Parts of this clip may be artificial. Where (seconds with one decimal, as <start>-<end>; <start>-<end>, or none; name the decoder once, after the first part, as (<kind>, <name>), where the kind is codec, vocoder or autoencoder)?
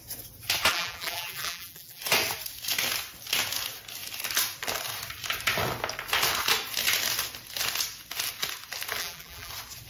0.7-2.0 (vocoder, BigVGAN v2); 9.0-9.5